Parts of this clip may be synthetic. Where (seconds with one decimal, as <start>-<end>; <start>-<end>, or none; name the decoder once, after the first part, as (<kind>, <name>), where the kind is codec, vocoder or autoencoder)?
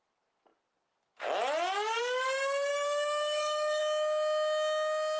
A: 2.7-3.8 (codec, SNAC)